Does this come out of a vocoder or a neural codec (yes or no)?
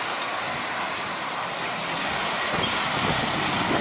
no